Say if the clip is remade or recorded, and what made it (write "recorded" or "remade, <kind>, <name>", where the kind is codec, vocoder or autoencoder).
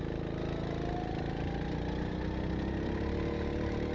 recorded